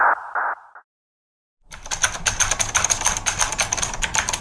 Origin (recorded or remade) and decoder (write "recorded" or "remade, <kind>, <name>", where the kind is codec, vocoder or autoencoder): recorded